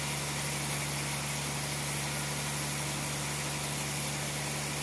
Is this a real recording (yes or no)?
yes